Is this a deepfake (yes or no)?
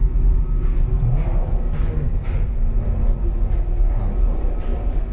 no